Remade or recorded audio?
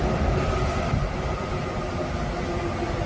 recorded